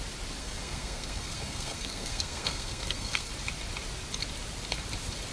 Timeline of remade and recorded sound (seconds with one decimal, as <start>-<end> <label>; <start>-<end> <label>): 0.0-0.4 recorded; 0.4-3.3 remade; 3.3-5.3 recorded